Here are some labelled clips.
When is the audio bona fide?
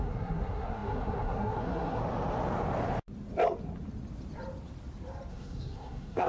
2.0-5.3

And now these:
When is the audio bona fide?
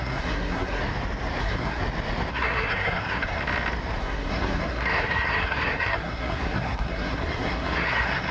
0.8-1.4; 1.8-2.3; 3.4-4.0